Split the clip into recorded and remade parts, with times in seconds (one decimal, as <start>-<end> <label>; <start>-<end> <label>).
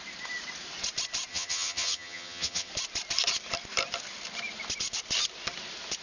0.0-1.3 recorded; 1.3-2.7 remade; 2.7-6.0 recorded